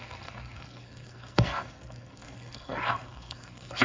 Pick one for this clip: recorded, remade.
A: remade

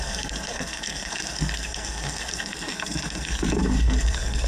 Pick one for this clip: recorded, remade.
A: remade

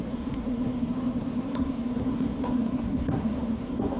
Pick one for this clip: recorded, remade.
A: remade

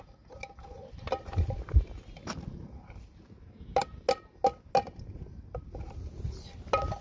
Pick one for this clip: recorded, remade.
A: recorded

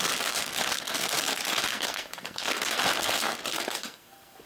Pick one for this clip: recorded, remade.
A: remade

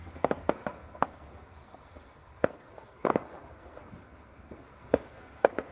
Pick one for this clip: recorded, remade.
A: remade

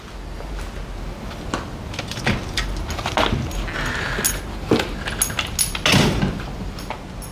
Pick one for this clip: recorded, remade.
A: recorded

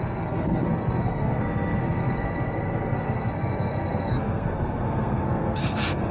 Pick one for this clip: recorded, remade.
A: remade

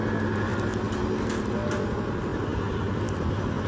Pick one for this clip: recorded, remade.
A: recorded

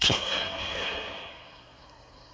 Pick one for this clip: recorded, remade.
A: remade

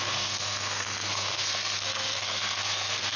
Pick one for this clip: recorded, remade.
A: remade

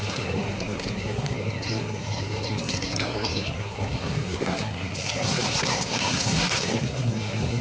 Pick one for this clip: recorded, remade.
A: remade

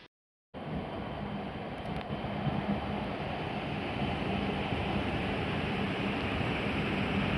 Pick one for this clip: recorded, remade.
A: recorded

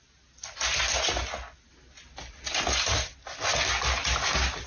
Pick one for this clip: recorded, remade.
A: recorded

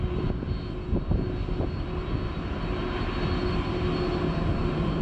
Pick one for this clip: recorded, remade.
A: recorded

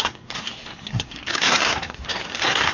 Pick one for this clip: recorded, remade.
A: remade